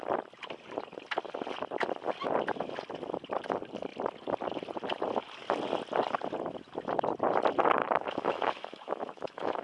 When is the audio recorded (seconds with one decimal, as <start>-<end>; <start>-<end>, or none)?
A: 0.0-7.8